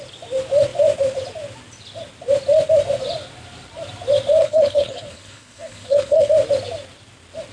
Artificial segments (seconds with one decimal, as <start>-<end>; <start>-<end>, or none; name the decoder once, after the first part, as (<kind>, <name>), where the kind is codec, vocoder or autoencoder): 4.4-6.3 (codec, HILCodec)